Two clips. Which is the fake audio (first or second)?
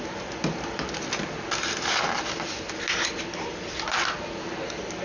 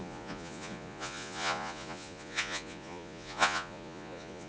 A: second